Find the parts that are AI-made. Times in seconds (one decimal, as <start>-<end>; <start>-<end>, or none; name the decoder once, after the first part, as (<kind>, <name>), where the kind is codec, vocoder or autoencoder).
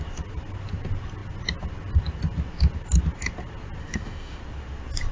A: 3.8-4.4 (autoencoder, DAC-VAE)